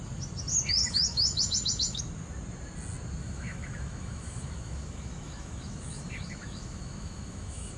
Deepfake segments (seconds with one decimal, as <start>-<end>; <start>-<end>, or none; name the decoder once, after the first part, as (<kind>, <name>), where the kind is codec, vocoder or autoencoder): 0.8-2.0 (autoencoder, DAC-VAE); 3.2-7.8